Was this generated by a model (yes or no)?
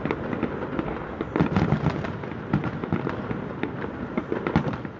no